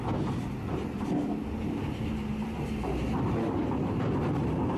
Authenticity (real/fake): real